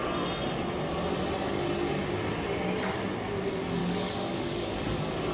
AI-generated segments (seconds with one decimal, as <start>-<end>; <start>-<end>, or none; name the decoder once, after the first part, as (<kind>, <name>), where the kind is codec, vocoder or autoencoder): 3.8-5.3 (codec, DAC)